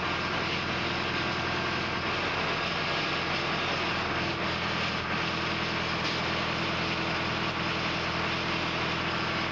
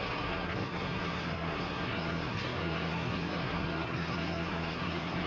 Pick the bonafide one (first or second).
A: first